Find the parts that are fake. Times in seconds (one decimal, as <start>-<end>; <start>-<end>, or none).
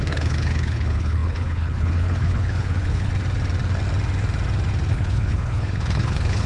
0.0-3.1; 4.9-6.5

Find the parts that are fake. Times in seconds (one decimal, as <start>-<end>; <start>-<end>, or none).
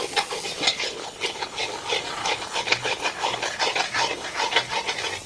0.7-1.6; 2.2-3.6